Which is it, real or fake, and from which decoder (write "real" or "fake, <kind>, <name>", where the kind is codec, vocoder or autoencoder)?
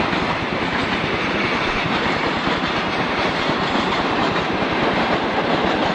fake, vocoder, BigVGAN v2